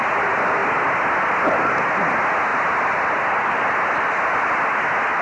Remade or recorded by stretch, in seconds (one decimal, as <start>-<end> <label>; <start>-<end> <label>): 0.0-2.5 recorded; 2.5-4.1 remade; 4.1-5.2 recorded